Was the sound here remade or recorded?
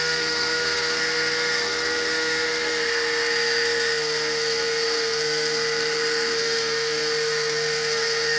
remade